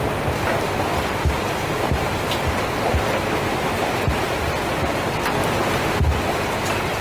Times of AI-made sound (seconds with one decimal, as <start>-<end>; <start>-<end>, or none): none

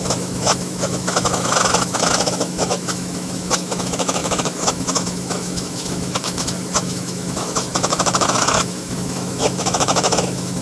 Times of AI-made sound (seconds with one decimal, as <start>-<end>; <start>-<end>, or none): 0.0-10.6

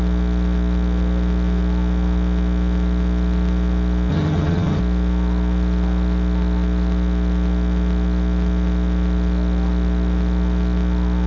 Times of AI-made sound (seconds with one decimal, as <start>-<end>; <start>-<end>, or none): 4.1-4.8

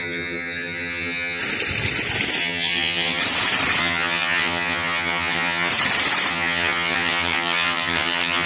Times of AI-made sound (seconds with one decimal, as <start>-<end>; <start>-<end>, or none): 0.0-1.4; 2.4-3.2; 3.8-5.7; 6.3-8.5

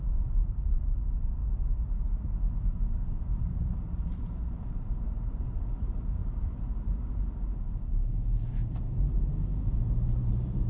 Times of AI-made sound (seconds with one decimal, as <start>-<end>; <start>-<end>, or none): 0.0-1.4; 3.4-10.7

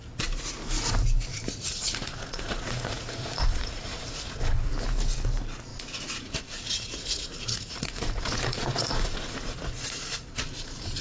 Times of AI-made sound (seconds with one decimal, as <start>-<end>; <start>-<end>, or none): 1.3-4.7; 5.7-11.0

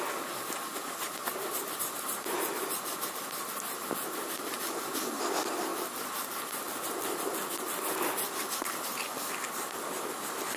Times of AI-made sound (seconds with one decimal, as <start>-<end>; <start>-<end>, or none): none